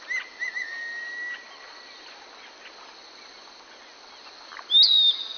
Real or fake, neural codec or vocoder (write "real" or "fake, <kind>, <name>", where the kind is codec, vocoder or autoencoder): real